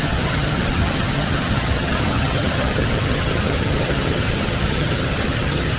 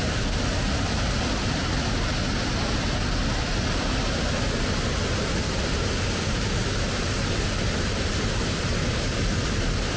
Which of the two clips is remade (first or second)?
first